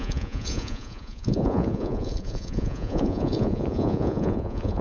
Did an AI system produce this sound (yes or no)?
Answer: yes